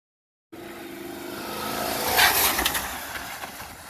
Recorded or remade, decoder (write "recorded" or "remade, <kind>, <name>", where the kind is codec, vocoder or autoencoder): recorded